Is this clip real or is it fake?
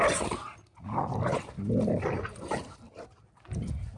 real